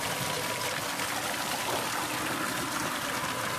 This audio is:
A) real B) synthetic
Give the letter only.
A